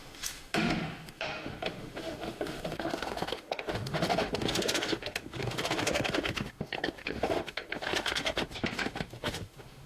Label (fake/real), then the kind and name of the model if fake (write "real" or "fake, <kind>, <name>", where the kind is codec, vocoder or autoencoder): fake, autoencoder, DAC-VAE